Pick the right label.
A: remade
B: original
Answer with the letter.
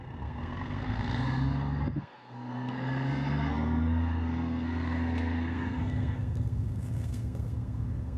A